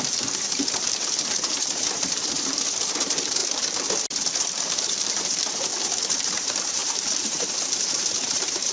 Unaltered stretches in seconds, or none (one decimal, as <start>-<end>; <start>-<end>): 3.4-4.6; 5.7-6.2